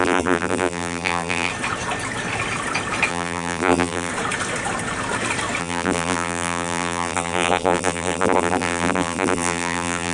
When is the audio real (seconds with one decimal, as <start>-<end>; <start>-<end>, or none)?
1.5-3.1; 4.1-5.6